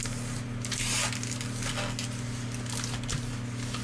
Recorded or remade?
recorded